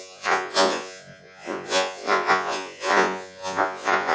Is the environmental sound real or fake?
fake